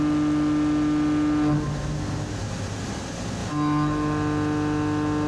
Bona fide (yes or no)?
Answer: yes